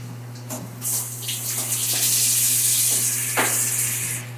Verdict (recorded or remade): recorded